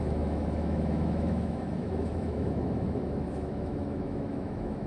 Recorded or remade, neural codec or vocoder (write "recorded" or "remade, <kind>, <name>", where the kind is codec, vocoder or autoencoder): remade, autoencoder, DAC-VAE